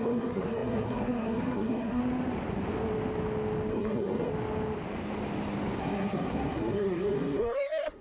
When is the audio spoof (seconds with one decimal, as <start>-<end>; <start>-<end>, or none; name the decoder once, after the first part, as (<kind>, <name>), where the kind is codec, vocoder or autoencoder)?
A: 0.0-2.0 (codec, SNAC); 3.7-4.3; 5.8-8.0